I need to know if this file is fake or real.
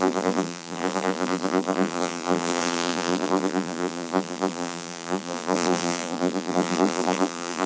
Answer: fake